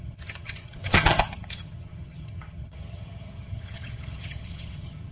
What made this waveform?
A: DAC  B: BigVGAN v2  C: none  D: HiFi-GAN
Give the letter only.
D